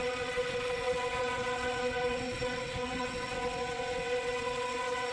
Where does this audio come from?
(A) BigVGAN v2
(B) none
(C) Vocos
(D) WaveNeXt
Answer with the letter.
D